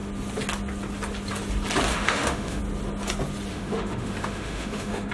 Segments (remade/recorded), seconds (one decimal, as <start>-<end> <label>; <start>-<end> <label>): 0.0-1.9 recorded; 1.9-2.6 remade; 2.6-3.5 recorded; 3.5-5.1 remade